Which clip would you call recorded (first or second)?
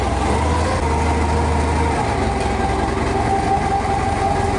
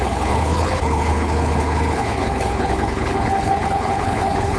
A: first